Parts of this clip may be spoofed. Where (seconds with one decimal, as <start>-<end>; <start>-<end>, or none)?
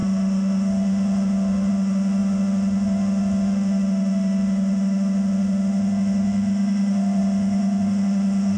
0.0-8.6